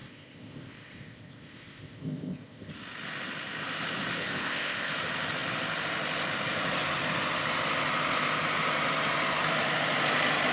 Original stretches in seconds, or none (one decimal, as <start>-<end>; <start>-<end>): 2.7-4.2; 4.9-10.5